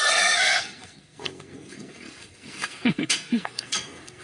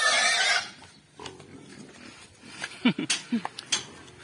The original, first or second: second